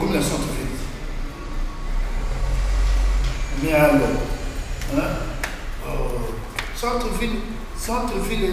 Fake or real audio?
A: real